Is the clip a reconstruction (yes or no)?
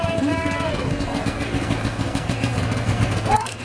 yes